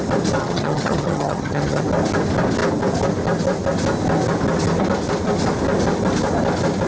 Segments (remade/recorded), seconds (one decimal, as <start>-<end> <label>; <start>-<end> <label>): 0.0-0.4 recorded; 0.4-1.8 remade; 1.8-6.9 recorded